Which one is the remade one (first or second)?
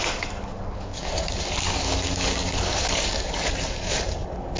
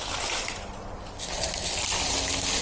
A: first